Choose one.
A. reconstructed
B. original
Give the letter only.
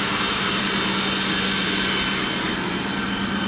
B